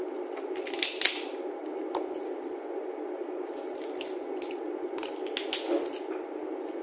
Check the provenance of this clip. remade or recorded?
recorded